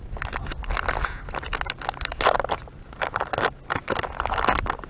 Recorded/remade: recorded